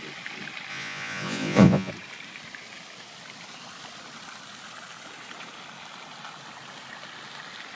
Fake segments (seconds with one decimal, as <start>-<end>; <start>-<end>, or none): 0.7-1.9